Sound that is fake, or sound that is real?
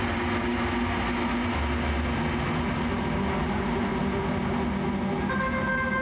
real